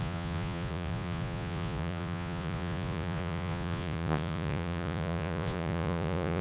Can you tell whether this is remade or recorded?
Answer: remade